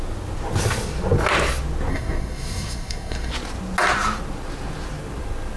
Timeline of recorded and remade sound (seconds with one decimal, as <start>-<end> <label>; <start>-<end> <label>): 0.0-1.9 recorded; 1.9-3.3 remade; 3.3-5.6 recorded